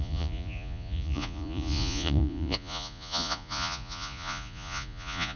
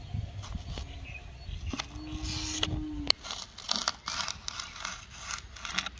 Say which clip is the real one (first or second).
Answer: second